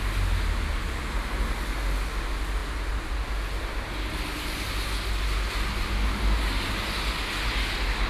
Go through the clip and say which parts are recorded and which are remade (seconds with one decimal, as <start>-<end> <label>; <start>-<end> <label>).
0.0-8.1 recorded